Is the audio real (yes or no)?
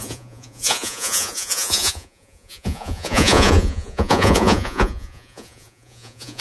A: no